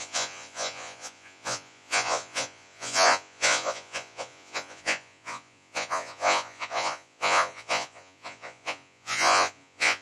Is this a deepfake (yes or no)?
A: yes